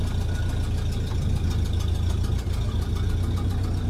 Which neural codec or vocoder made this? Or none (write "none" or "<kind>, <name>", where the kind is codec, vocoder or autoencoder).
none